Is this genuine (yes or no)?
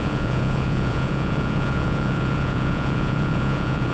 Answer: no